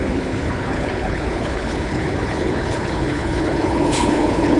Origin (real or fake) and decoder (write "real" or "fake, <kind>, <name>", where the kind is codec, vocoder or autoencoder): fake, codec, HILCodec